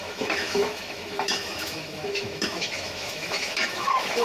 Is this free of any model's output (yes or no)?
no